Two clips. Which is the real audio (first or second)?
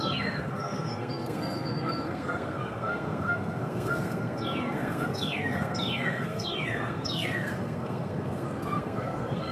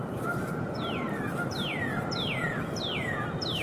second